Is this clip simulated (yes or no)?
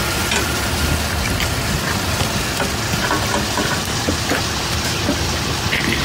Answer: no